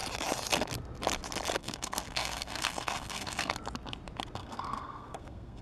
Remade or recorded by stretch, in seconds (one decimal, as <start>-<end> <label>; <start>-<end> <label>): 0.0-1.6 recorded; 1.6-3.5 remade; 3.5-4.4 recorded; 4.4-5.6 remade